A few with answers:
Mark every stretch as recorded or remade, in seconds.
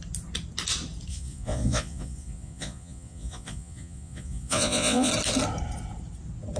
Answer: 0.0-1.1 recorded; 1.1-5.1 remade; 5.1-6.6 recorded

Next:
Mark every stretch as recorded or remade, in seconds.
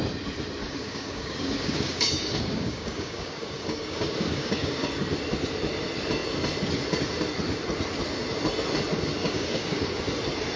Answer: 0.0-0.6 recorded; 0.6-4.9 remade; 4.9-9.2 recorded; 9.2-10.0 remade; 10.0-10.6 recorded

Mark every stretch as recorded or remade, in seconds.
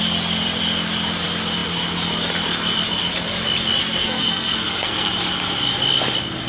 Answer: 0.0-3.8 recorded; 3.8-5.1 remade; 5.1-6.5 recorded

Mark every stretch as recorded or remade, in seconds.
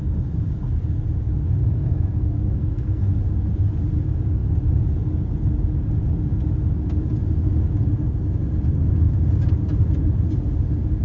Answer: 0.0-1.6 recorded; 1.6-3.1 remade; 3.1-11.0 recorded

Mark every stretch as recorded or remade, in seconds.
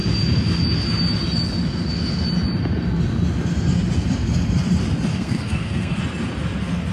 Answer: 0.0-5.1 recorded; 5.1-6.0 remade; 6.0-6.9 recorded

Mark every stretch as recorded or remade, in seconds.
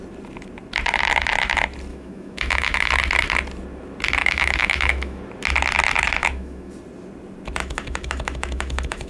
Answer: 0.0-1.9 recorded; 1.9-2.9 remade; 2.9-4.2 recorded; 4.2-5.2 remade; 5.2-6.2 recorded; 6.2-6.7 remade; 6.7-7.6 recorded; 7.6-9.1 remade